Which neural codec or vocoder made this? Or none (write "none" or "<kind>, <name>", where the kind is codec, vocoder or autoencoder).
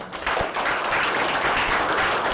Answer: none